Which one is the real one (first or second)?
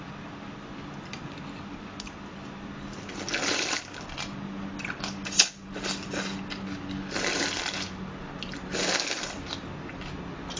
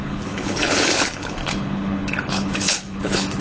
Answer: first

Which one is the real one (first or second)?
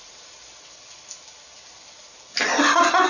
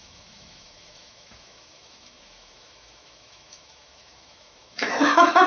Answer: first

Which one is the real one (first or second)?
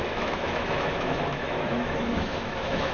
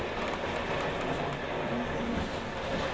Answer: second